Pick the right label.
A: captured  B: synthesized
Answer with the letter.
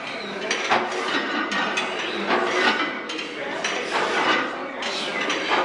A